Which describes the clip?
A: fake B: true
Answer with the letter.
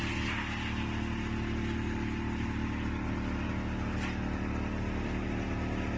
B